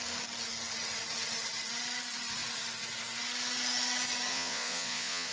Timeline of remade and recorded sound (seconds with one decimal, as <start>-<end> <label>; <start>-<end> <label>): 0.0-4.3 recorded; 4.3-5.3 remade